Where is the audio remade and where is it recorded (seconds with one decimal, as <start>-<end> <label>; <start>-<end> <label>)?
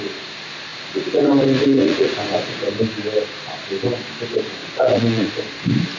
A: 0.0-0.7 recorded; 0.7-2.7 remade; 2.7-4.6 recorded; 4.6-5.3 remade; 5.3-6.0 recorded